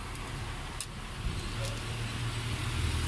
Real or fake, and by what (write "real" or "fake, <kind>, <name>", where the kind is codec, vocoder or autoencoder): real